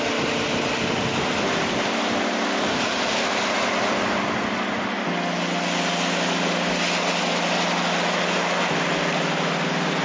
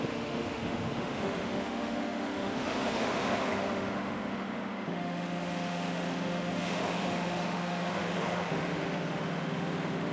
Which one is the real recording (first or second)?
first